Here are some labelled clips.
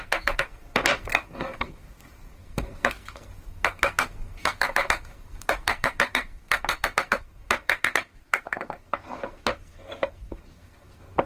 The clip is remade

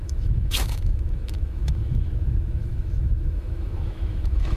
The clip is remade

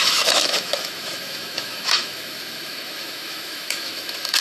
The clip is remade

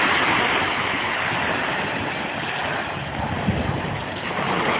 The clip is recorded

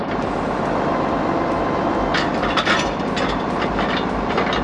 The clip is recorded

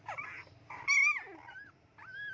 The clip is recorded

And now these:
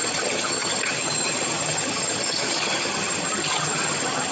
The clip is remade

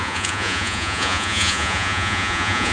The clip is remade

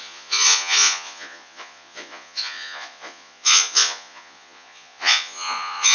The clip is remade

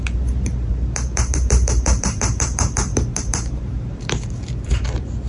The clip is remade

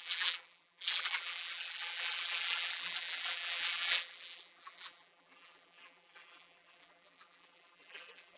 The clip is remade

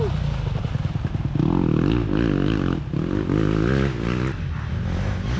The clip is recorded